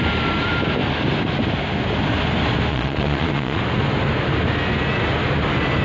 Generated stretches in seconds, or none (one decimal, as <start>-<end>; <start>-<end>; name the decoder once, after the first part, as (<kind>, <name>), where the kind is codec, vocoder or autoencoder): 2.7-3.6 (vocoder, Vocos)